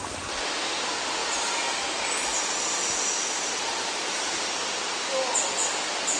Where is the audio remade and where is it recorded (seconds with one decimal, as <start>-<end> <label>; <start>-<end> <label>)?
0.0-6.2 recorded